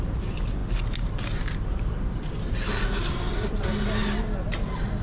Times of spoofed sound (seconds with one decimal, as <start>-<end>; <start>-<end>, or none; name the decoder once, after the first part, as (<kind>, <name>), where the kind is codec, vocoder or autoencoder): none